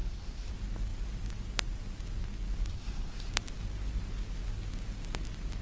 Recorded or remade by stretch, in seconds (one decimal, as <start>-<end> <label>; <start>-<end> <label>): 0.0-0.5 remade; 0.5-2.7 recorded; 2.7-3.3 remade; 3.3-5.6 recorded